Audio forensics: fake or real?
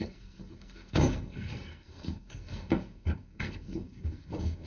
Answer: fake